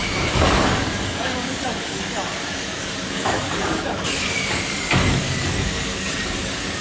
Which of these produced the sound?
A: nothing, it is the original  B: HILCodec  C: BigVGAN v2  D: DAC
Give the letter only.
D